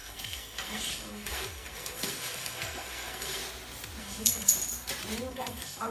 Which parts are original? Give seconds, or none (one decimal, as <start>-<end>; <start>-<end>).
3.4-4.0; 4.5-5.3